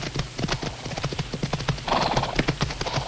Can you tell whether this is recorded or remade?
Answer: recorded